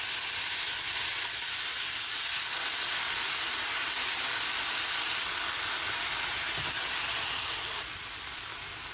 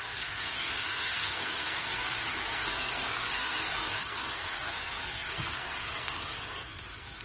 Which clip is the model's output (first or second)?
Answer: second